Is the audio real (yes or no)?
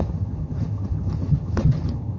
no